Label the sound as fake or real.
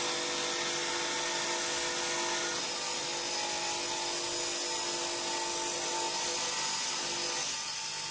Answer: real